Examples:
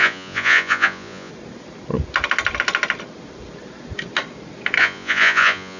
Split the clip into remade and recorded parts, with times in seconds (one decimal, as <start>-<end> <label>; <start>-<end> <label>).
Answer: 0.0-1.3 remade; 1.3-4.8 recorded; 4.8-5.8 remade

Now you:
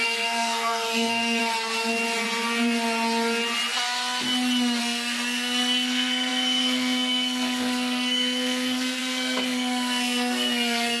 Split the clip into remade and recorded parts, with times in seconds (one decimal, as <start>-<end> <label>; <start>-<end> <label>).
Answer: 0.0-1.4 remade; 1.4-4.8 recorded; 4.8-11.0 remade

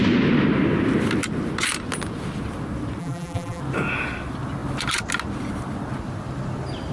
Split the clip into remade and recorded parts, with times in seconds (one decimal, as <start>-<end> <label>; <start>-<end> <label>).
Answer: 0.0-3.0 recorded; 3.0-3.6 remade; 3.6-6.9 recorded

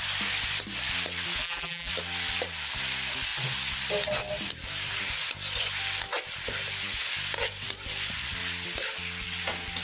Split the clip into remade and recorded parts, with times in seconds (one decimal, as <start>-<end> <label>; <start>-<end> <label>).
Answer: 0.0-1.4 recorded; 1.4-1.9 remade; 1.9-9.8 recorded

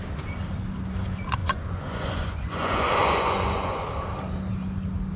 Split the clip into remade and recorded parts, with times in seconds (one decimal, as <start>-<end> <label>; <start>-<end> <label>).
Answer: 0.0-1.4 recorded; 1.4-3.8 remade; 3.8-5.2 recorded